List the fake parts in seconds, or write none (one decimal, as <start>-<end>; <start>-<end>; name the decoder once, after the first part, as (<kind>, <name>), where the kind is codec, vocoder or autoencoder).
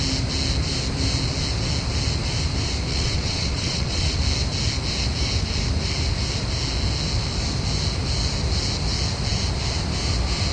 2.9-4.2 (vocoder, WaveNeXt)